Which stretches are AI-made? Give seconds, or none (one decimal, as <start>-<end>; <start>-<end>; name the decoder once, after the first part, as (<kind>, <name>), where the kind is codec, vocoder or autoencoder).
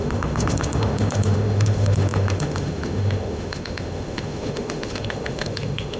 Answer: 0.0-6.0 (autoencoder, DAC-VAE)